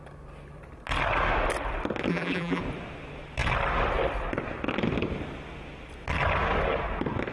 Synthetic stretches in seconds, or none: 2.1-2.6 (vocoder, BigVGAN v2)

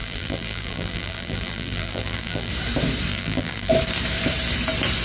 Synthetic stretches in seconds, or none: 0.0-2.5 (vocoder, BigVGAN v2); 3.1-3.7

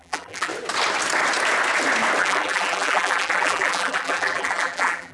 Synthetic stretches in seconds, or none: 0.0-0.5 (vocoder, BigVGAN v2); 2.2-5.1

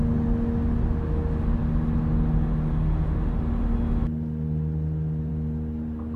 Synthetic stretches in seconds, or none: none

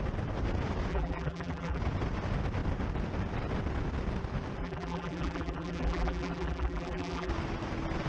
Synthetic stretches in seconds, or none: 0.9-1.8 (vocoder, BigVGAN v2); 4.6-7.3

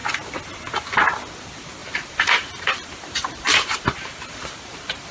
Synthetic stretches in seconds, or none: 1.8-5.1 (vocoder, BigVGAN v2)